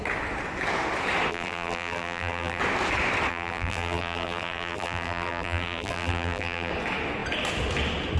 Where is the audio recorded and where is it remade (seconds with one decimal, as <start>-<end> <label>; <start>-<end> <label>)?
0.0-1.3 recorded; 1.3-2.6 remade; 2.6-3.3 recorded; 3.3-6.7 remade; 6.7-8.2 recorded